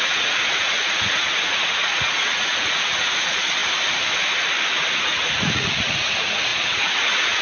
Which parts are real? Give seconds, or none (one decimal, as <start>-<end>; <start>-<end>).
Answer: 3.6-4.9